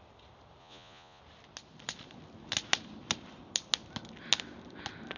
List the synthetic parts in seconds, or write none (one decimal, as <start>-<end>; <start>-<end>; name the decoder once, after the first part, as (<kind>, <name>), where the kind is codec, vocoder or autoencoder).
0.6-1.2 (vocoder, Vocos)